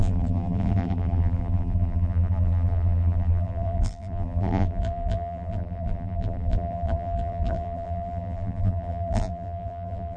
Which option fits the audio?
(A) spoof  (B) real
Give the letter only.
A